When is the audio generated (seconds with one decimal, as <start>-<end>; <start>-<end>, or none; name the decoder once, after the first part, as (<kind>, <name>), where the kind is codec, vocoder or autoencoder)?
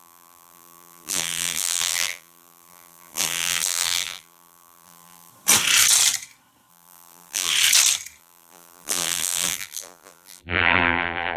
0.0-5.3 (vocoder, BigVGAN v2); 6.7-7.5; 8.2-11.4